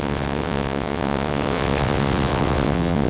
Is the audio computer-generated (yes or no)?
yes